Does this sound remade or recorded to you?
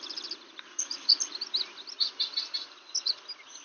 recorded